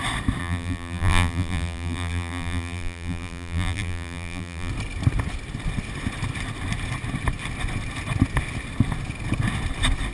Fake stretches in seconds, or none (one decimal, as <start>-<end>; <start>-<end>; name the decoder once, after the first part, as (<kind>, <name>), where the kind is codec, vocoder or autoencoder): 0.4-4.7 (vocoder, BigVGAN v2)